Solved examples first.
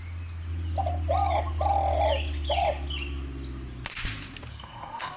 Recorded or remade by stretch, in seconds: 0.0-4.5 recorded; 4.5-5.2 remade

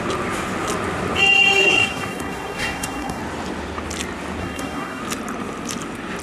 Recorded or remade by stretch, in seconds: 0.0-1.6 recorded; 1.6-3.2 remade; 3.2-4.4 recorded; 4.4-5.0 remade; 5.0-6.2 recorded

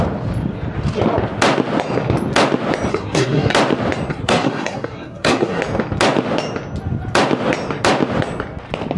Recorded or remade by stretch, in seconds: 0.0-2.9 recorded; 2.9-3.5 remade; 3.5-4.1 recorded; 4.1-5.6 remade; 5.6-9.0 recorded

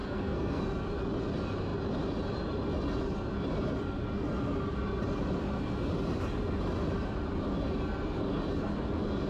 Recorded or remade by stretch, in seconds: 0.0-0.6 remade; 0.6-9.3 recorded

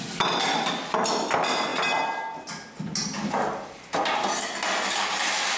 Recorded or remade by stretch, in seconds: 0.0-5.6 recorded